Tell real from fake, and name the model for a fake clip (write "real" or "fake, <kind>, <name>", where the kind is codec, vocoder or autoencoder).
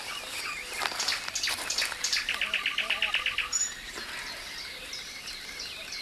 real